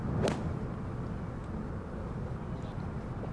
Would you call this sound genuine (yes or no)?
yes